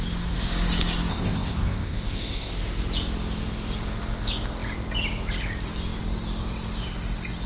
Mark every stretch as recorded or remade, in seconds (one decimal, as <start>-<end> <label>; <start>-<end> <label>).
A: 0.0-1.1 recorded; 1.1-2.5 remade; 2.5-7.5 recorded